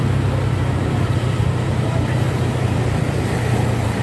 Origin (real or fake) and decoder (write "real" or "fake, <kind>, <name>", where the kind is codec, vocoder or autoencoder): fake, vocoder, BigVGAN v2